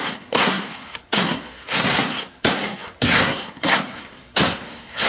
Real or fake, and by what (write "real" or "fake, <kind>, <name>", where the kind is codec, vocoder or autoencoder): fake, codec, SNAC